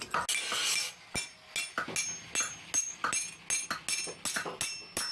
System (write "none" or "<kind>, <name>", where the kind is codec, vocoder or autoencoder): none